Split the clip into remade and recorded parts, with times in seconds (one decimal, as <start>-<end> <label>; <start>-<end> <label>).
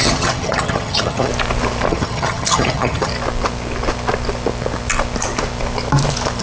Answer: 0.0-1.3 remade; 1.3-1.9 recorded; 1.9-3.1 remade; 3.1-6.4 recorded